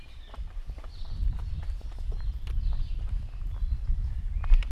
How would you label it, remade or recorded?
remade